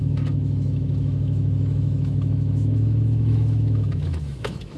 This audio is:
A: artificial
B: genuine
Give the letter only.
A